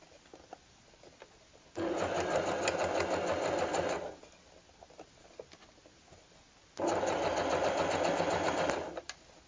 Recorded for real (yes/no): yes